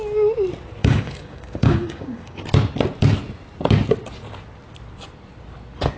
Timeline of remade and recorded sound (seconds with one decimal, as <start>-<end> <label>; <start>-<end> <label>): 0.0-0.8 recorded; 0.8-2.4 remade; 2.4-6.0 recorded